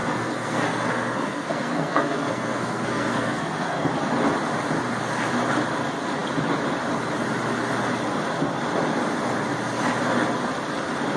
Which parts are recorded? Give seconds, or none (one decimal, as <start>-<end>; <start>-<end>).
3.9-11.2